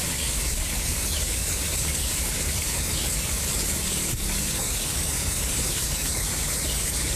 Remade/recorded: remade